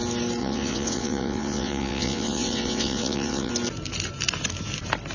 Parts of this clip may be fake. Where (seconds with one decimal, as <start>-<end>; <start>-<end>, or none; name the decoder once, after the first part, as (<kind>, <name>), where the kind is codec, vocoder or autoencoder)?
0.4-3.5 (vocoder, WaveNeXt)